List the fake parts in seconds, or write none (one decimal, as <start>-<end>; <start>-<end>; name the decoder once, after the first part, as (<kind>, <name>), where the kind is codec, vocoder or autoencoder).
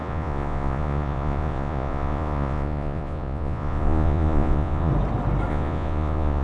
0.0-4.9 (vocoder, Vocos); 5.5-6.4